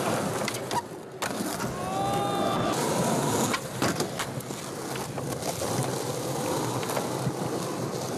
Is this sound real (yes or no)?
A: yes